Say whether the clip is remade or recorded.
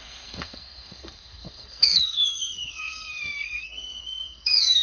remade